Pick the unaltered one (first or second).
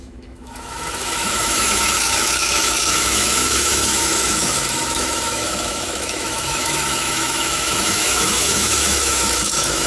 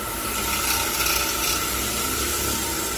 second